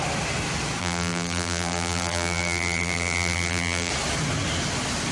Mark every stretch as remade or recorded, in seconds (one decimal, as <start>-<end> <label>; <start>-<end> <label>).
0.0-0.8 recorded; 0.8-3.9 remade; 3.9-5.1 recorded